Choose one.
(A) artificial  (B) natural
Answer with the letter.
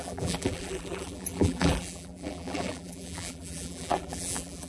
A